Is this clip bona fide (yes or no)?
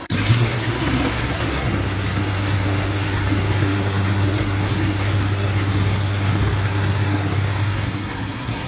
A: no